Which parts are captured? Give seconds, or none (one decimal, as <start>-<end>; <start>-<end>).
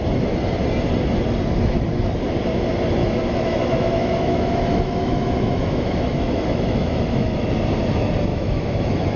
0.0-3.0; 7.5-8.3